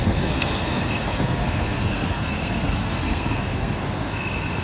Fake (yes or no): yes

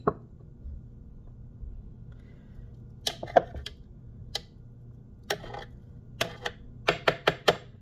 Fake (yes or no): no